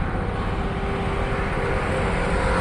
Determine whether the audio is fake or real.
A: real